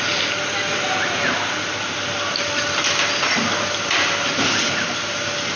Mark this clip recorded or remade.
recorded